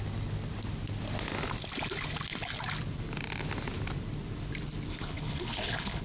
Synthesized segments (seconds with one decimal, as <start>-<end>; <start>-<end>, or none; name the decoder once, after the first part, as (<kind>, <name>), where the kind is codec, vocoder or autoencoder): 4.9-6.0 (codec, HILCodec)